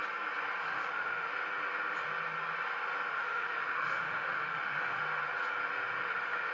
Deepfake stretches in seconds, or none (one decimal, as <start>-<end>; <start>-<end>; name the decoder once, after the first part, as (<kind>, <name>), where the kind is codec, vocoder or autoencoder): 0.6-1.3 (autoencoder, DAC-VAE); 3.1-5.0; 6.0-6.5